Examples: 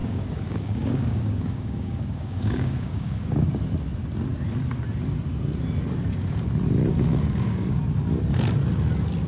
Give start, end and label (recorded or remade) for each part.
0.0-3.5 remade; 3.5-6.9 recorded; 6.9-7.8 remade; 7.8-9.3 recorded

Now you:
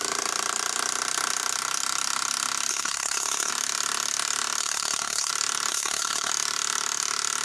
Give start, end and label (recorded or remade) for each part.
0.0-2.7 recorded; 2.7-3.5 remade; 3.5-4.6 recorded; 4.6-5.3 remade; 5.3-5.7 recorded; 5.7-6.3 remade; 6.3-7.4 recorded

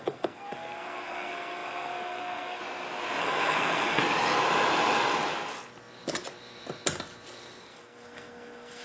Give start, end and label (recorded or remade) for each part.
0.0-2.6 remade; 2.6-3.2 recorded; 3.2-4.0 remade; 4.0-7.6 recorded; 7.6-8.8 remade

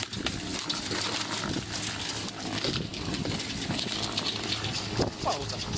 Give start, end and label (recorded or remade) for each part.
0.0-5.8 recorded

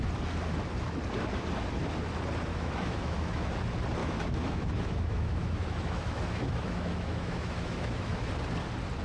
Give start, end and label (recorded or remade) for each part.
0.0-2.5 recorded; 2.5-3.5 remade; 3.5-4.0 recorded; 4.0-8.3 remade; 8.3-9.0 recorded

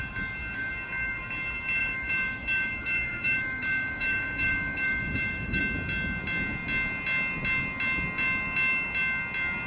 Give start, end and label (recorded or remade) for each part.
0.0-1.8 recorded; 1.8-5.6 remade; 5.6-9.7 recorded